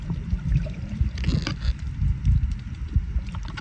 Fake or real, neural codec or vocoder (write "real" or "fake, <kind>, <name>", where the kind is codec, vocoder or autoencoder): real